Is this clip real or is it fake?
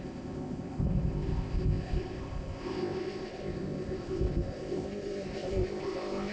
fake